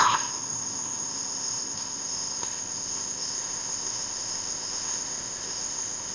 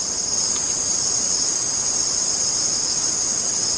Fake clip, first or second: first